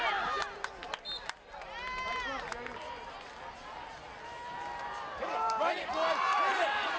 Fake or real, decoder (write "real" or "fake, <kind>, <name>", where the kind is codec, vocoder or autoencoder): real